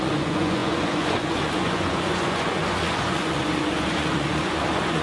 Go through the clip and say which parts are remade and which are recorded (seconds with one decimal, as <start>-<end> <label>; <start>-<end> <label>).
0.0-5.0 remade